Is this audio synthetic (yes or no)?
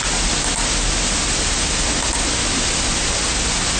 no